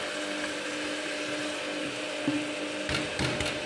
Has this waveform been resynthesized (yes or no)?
no